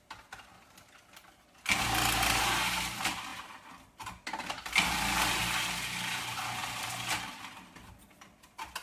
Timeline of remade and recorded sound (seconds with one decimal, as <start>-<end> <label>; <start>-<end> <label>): 0.0-8.8 recorded